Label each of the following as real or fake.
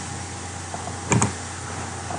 real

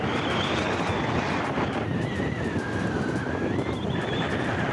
real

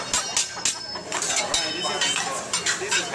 real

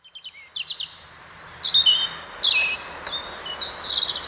real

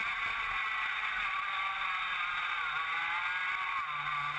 real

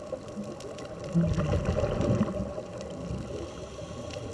real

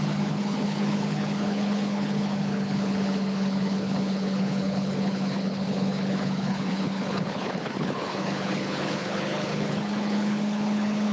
fake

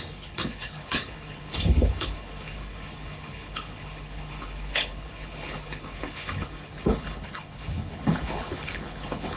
fake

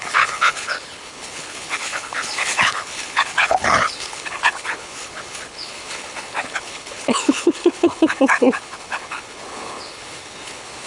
fake